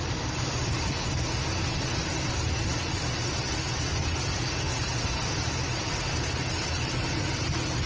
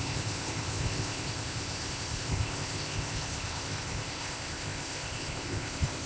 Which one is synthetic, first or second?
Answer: second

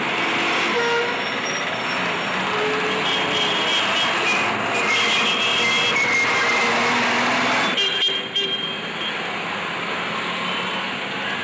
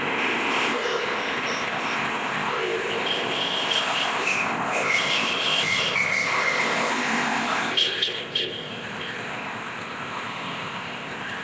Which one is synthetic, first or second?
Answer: second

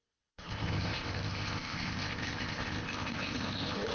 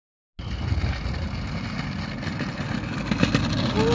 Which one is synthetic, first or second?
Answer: first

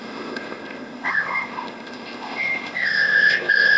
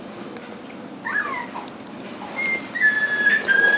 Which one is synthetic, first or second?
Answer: first